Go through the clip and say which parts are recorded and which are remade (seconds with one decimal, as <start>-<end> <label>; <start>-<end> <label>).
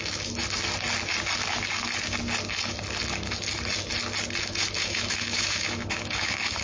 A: 0.0-0.4 remade; 0.4-4.4 recorded; 4.4-6.6 remade